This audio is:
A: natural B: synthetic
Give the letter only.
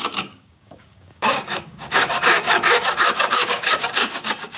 B